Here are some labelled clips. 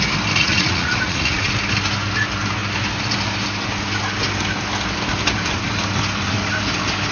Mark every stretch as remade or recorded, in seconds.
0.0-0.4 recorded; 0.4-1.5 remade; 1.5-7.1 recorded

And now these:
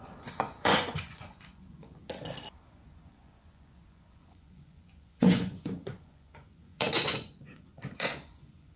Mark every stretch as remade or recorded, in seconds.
0.0-2.0 remade; 2.0-2.6 recorded; 2.6-8.8 remade

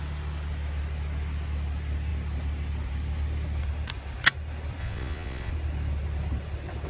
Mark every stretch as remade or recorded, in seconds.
0.0-4.8 recorded; 4.8-5.5 remade; 5.5-6.9 recorded